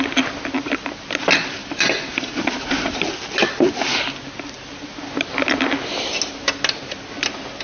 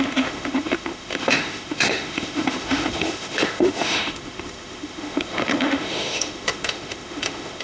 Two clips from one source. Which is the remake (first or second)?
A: second